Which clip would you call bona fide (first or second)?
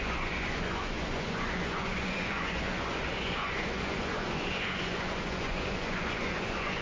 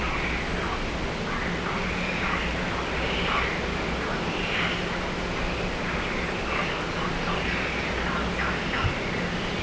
second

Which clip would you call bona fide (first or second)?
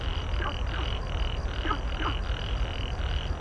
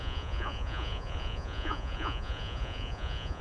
first